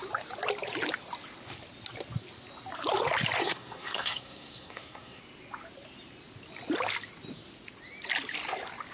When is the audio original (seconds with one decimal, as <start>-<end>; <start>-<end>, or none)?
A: 0.0-3.4; 5.2-8.9